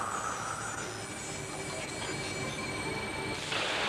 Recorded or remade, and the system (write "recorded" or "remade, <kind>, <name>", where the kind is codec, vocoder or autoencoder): recorded